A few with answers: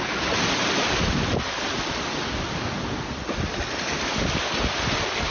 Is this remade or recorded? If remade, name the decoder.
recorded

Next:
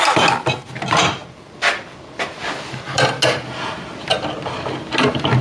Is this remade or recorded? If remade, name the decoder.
recorded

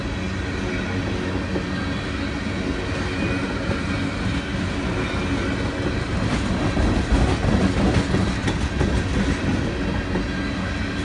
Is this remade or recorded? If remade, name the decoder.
recorded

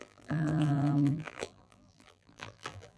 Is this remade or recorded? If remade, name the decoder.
remade, vocoder, BigVGAN v2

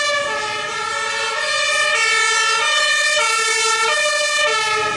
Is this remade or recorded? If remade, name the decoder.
recorded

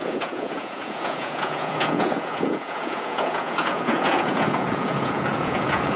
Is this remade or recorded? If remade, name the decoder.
remade, vocoder, Vocos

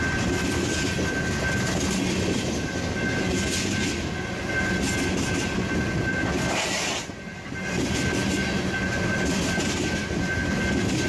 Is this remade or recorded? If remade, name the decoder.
recorded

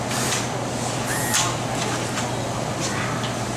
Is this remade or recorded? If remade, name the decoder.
recorded